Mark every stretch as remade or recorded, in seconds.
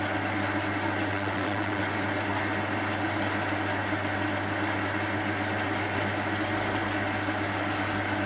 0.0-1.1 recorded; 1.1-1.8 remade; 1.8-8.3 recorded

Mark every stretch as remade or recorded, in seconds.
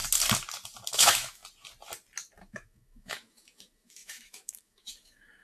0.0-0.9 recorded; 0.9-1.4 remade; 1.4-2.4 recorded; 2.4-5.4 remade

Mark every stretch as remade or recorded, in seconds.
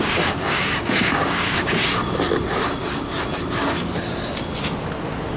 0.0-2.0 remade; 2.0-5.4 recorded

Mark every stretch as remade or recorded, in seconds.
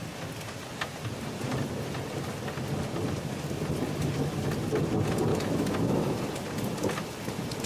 0.0-5.3 recorded; 5.3-6.2 remade; 6.2-7.7 recorded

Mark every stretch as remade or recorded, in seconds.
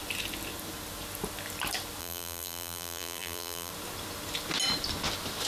0.0-2.0 recorded; 2.0-3.7 remade; 3.7-5.5 recorded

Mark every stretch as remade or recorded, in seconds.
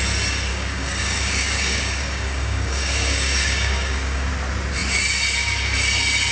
0.0-0.5 recorded; 0.5-4.3 remade; 4.3-6.3 recorded